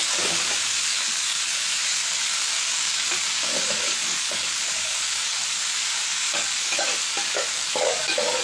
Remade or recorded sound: remade